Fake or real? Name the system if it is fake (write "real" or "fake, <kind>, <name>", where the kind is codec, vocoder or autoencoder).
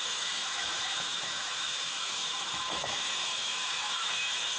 fake, autoencoder, DAC-VAE